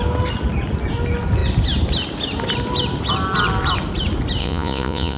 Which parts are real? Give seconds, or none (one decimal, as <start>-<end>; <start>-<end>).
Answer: 0.0-4.4